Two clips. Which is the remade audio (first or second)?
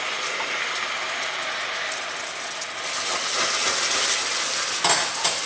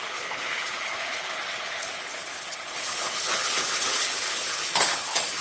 second